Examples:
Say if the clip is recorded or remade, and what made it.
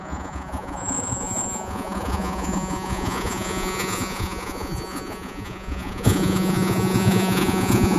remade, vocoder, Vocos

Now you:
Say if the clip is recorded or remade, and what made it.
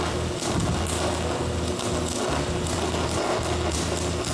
recorded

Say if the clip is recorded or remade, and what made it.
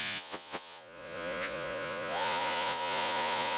remade, vocoder, Vocos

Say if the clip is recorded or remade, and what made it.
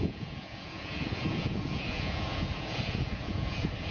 remade, vocoder, Vocos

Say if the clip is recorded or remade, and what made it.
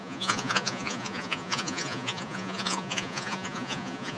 remade, vocoder, Vocos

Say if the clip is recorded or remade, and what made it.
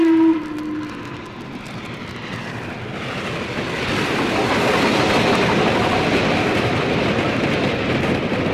recorded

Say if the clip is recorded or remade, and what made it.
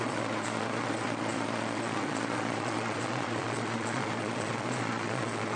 remade, vocoder, Vocos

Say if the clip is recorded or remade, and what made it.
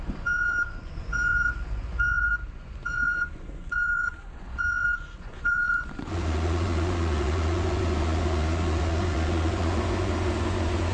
remade, vocoder, Vocos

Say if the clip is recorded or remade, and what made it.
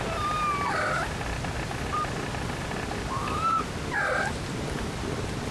recorded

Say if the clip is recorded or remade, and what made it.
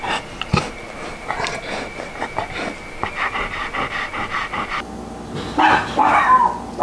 recorded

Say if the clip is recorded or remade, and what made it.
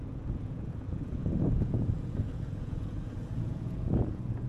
remade, vocoder, Vocos